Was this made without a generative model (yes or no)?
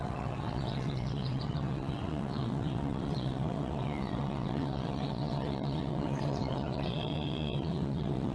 no